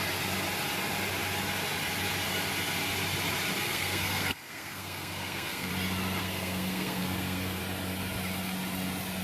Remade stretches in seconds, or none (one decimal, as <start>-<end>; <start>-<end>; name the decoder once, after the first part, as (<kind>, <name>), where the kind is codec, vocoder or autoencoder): 3.6-5.7 (codec, SNAC); 6.2-7.6